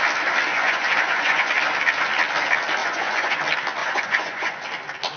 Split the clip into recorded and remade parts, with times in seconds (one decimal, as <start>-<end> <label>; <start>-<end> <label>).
0.0-0.5 recorded; 0.5-1.5 remade; 1.5-2.8 recorded; 2.8-3.4 remade; 3.4-3.8 recorded; 3.8-4.6 remade; 4.6-5.2 recorded